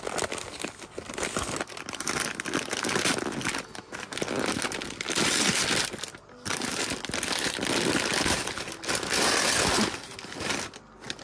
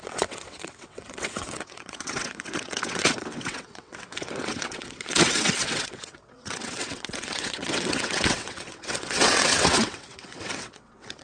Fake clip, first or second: second